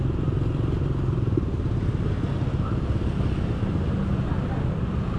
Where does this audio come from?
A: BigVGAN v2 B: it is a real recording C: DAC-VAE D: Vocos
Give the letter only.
B